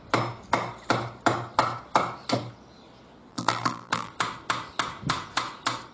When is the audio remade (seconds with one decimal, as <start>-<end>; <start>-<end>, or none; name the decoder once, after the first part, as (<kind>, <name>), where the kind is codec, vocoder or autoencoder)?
3.3-4.1 (vocoder, BigVGAN v2)